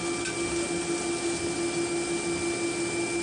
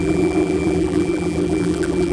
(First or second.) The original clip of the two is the first